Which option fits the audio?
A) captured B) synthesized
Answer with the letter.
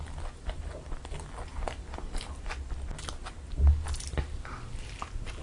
A